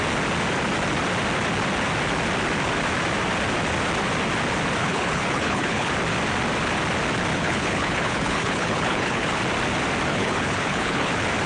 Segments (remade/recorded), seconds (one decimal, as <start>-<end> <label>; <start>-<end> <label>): 0.0-4.8 recorded; 4.8-5.9 remade; 5.9-7.3 recorded; 7.3-9.4 remade; 9.4-10.1 recorded; 10.1-11.1 remade; 11.1-11.5 recorded